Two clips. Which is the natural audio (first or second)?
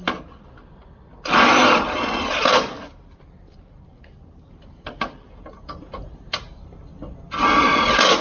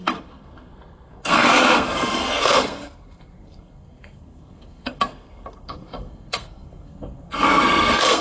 first